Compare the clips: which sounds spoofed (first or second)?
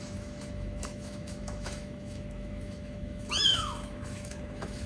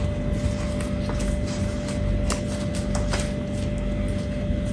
first